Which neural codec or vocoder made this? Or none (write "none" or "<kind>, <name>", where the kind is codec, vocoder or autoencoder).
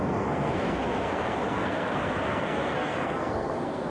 codec, SNAC